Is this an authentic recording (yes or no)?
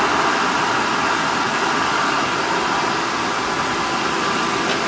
yes